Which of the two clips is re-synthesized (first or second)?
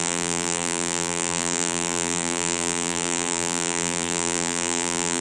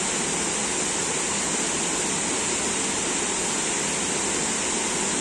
first